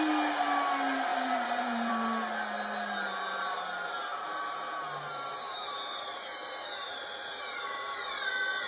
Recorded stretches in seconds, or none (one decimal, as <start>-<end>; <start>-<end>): 0.0-1.1; 1.9-4.1; 8.1-8.7